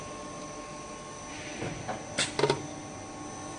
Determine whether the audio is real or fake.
real